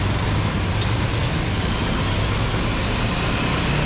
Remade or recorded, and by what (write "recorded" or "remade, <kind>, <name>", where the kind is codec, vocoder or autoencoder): recorded